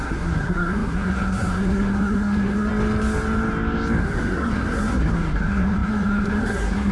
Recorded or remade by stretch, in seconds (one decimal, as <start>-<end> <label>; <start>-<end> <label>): 0.0-2.7 remade; 2.7-4.0 recorded; 4.0-6.9 remade